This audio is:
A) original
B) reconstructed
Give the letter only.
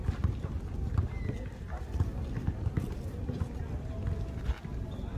A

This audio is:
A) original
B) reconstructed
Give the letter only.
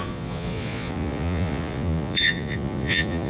B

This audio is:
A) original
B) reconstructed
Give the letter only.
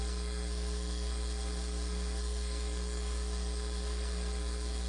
B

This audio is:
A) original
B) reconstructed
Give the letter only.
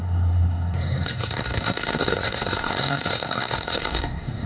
B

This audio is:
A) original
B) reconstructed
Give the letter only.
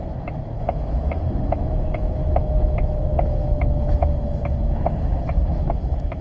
B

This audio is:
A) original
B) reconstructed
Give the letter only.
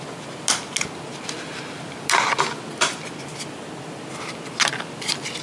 A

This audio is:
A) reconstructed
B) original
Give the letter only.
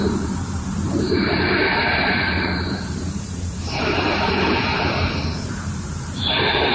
A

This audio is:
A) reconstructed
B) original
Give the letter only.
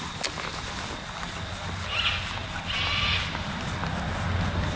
B